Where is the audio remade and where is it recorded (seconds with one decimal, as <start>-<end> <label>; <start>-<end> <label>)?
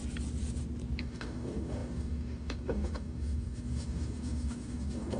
0.0-1.0 recorded; 1.0-5.2 remade